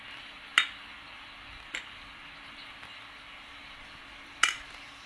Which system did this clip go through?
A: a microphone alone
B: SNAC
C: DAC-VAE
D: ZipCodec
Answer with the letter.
A